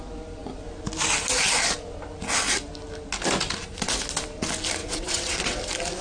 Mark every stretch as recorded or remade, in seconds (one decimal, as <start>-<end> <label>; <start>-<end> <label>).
0.0-4.8 recorded; 4.8-5.6 remade; 5.6-6.0 recorded